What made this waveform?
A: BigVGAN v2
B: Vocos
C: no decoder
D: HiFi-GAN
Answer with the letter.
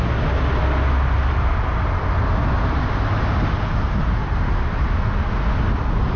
C